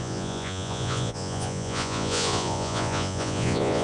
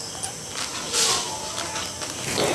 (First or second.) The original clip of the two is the second